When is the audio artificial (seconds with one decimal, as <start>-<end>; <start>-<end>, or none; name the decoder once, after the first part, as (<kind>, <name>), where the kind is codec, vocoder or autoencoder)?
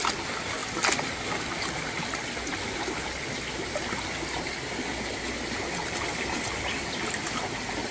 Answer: none